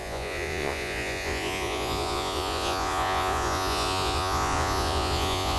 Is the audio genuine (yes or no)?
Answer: no